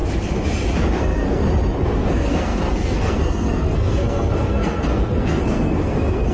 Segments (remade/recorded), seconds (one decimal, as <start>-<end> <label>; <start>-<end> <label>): 0.0-0.9 recorded; 0.9-1.4 remade; 1.4-2.0 recorded; 2.0-6.3 remade